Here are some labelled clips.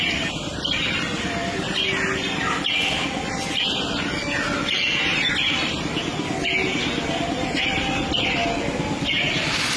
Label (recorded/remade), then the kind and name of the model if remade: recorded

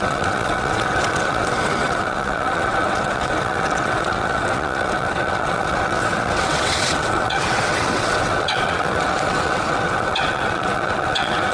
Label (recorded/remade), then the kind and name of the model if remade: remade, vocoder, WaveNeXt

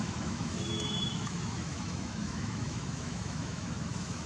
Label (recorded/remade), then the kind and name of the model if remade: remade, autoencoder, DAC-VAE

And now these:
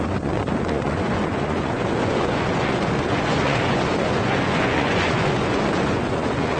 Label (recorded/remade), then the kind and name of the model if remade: remade, vocoder, Vocos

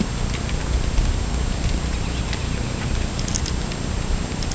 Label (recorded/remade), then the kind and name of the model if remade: recorded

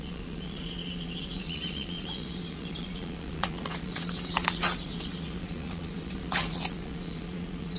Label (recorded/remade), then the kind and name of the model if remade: remade, vocoder, Vocos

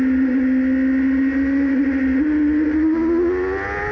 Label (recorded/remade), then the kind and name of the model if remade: recorded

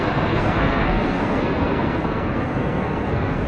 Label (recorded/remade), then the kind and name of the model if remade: remade, codec, SNAC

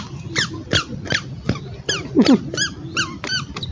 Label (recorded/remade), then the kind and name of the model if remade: recorded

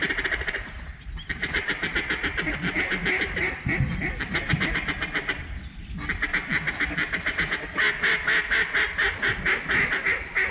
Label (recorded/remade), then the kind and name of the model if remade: recorded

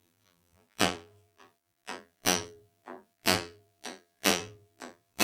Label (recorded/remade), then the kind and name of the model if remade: remade, vocoder, BigVGAN v2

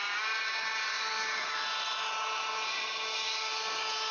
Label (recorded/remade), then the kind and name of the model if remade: recorded